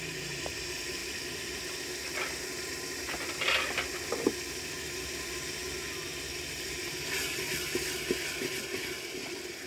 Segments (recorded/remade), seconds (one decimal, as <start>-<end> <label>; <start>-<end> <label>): 0.0-9.7 recorded